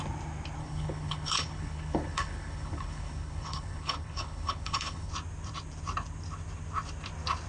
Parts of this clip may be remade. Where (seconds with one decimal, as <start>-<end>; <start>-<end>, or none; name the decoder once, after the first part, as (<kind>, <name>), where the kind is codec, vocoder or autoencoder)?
0.6-5.1 (codec, HILCodec)